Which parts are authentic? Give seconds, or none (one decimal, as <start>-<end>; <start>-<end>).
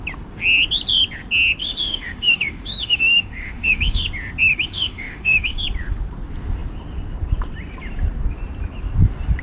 0.0-1.6; 4.0-4.5; 5.6-9.4